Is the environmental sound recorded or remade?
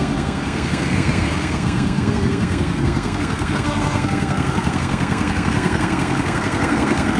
remade